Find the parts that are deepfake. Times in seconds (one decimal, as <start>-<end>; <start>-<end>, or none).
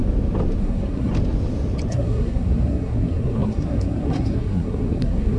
0.6-1.1; 1.9-5.4